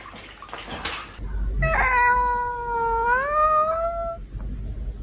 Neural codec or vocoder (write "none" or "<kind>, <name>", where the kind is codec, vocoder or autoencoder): none